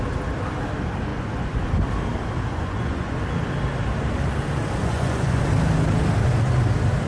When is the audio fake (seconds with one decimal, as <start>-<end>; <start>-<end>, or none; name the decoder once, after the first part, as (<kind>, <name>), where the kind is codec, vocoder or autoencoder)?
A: 1.1-1.7 (vocoder, Vocos); 2.5-3.2; 4.8-5.4